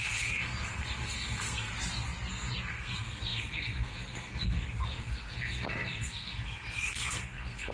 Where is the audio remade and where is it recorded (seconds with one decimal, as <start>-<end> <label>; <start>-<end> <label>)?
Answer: 0.0-1.7 remade; 1.7-2.3 recorded; 2.3-7.7 remade